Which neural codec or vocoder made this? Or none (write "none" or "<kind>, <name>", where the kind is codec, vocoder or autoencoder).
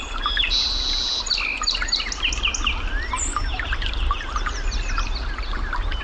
none